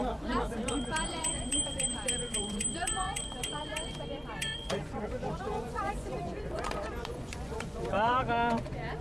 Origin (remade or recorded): remade